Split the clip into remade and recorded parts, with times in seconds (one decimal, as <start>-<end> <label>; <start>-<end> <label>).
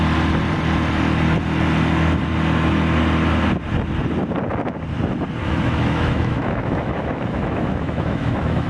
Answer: 0.0-5.4 recorded; 5.4-8.7 remade